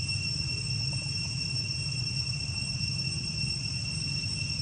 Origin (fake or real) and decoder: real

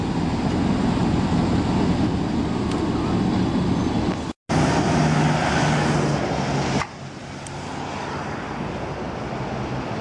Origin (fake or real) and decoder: real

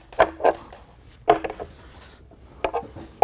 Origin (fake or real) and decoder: real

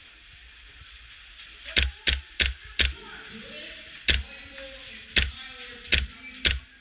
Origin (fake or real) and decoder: real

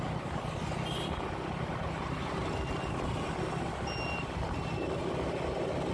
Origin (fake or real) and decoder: real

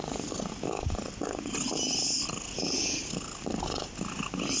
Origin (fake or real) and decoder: real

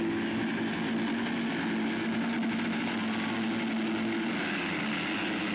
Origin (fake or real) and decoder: real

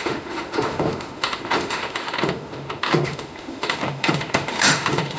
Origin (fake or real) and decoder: fake, autoencoder, DAC-VAE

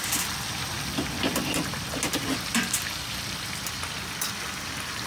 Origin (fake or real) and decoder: real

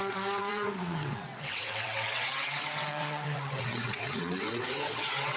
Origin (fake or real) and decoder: fake, vocoder, WaveNeXt